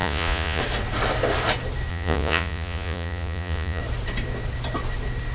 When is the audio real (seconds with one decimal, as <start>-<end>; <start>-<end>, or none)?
0.6-1.9; 3.8-5.3

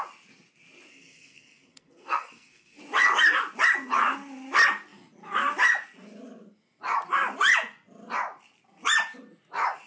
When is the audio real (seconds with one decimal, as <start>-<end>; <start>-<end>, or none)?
0.0-0.9; 2.8-9.9

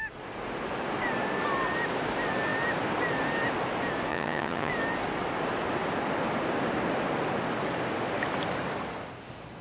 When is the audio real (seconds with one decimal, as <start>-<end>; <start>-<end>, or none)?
0.0-4.1; 4.7-9.6

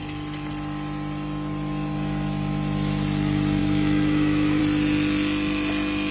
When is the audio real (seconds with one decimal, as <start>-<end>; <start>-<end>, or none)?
0.0-3.6; 4.6-6.1

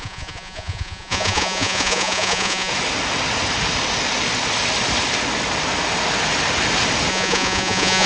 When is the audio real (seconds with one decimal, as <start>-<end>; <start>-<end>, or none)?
2.7-7.1

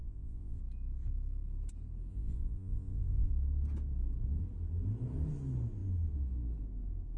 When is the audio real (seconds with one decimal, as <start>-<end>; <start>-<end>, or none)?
0.6-2.1; 3.3-7.2